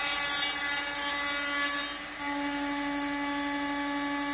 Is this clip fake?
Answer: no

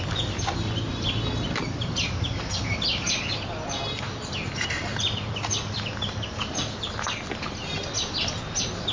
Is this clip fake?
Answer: no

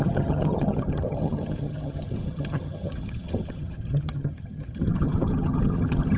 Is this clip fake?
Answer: yes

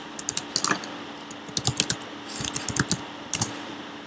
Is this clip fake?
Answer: no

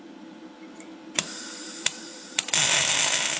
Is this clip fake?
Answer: yes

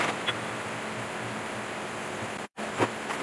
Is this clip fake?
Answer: no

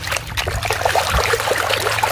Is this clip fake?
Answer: no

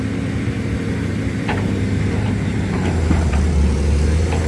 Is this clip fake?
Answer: yes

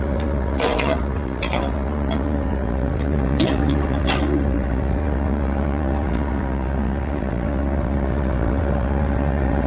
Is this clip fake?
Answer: yes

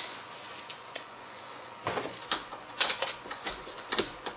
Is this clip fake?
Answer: yes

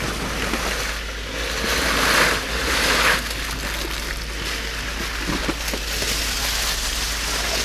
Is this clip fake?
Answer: no